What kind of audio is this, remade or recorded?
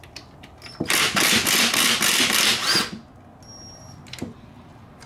recorded